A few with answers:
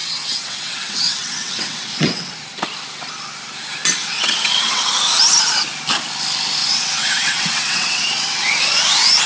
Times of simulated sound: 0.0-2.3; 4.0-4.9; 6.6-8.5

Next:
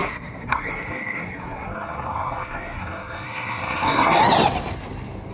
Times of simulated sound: 0.0-4.2

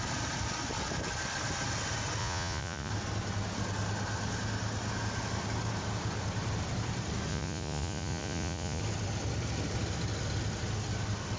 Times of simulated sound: 2.2-2.9; 7.3-8.8

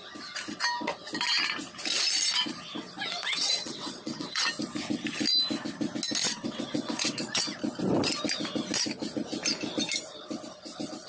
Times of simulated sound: 3.2-4.4; 6.2-7.4

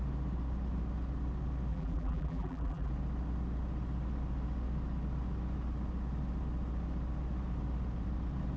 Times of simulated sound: 1.7-2.9